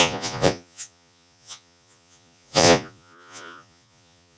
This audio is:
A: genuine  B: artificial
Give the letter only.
B